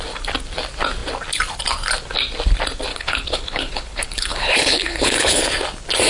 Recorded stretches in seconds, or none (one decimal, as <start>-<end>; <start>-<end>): 0.0-2.9; 5.4-6.1